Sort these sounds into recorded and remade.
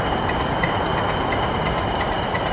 recorded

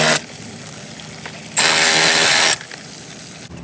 recorded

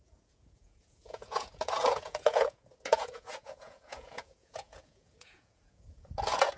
remade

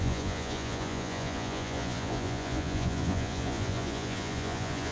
remade